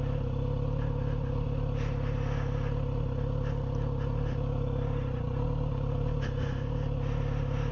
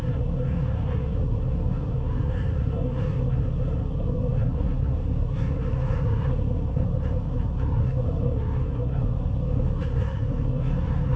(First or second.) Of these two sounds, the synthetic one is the second